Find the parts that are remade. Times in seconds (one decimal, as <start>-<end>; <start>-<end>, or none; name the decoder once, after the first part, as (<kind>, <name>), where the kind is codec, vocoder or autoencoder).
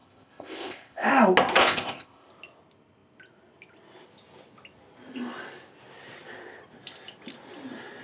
0.0-1.1 (codec, ZipCodec); 1.6-2.3